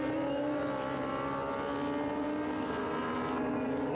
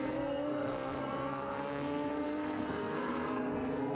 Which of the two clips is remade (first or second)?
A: second